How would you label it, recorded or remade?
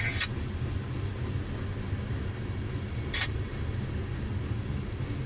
recorded